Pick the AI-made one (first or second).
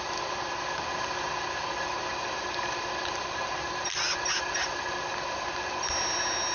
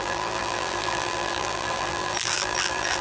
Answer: second